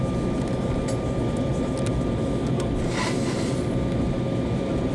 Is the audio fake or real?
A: real